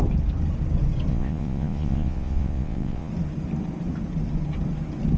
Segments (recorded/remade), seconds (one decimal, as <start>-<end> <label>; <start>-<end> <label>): 0.0-1.1 recorded; 1.1-3.1 remade; 3.1-5.2 recorded